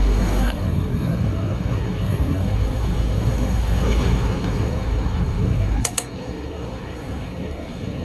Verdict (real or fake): fake